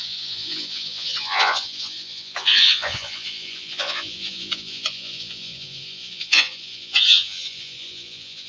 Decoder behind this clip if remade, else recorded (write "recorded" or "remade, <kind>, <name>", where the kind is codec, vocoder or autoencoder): remade, vocoder, Vocos